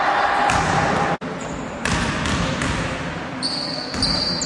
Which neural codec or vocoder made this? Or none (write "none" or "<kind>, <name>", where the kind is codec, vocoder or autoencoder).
none